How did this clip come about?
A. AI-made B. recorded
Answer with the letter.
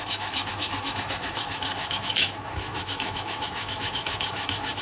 A